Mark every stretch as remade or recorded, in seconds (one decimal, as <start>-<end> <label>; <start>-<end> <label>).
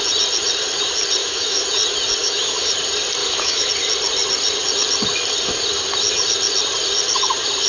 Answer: 0.0-1.2 recorded; 1.2-1.7 remade; 1.7-2.2 recorded; 2.2-2.7 remade; 2.7-3.2 recorded; 3.2-3.7 remade; 3.7-7.7 recorded